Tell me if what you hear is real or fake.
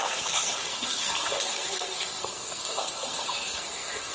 fake